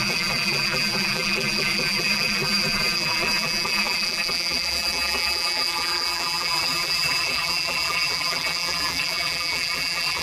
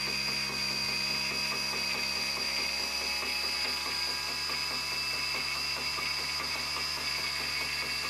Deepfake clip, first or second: first